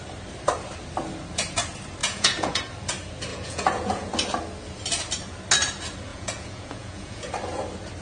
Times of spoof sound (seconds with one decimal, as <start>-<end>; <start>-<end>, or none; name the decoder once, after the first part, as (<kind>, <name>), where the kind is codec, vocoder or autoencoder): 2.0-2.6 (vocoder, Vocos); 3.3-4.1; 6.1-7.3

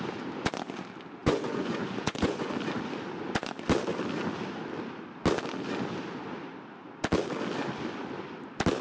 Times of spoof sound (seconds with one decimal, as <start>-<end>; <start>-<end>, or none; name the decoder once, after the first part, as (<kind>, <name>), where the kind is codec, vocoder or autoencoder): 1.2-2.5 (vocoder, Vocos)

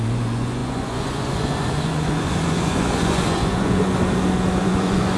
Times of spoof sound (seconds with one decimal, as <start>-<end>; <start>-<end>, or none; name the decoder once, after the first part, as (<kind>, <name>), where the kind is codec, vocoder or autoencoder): 0.0-3.9 (vocoder, Vocos); 4.6-5.2

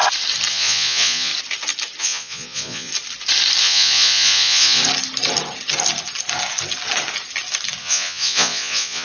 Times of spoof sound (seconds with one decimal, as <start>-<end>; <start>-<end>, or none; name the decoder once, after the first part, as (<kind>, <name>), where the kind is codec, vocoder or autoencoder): 0.5-1.3 (vocoder, Vocos); 2.0-2.9; 3.6-4.8; 7.8-9.0

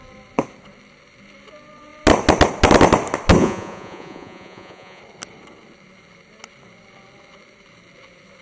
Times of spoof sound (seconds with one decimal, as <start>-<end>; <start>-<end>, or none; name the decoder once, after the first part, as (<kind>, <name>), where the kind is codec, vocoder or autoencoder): 3.4-5.0 (vocoder, Vocos)

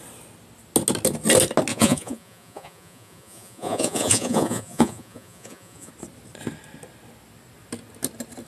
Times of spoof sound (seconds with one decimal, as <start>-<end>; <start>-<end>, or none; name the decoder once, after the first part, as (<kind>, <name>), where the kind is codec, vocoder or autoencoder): 1.7-5.9 (vocoder, Vocos)